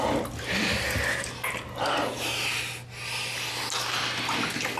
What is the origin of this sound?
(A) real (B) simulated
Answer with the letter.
A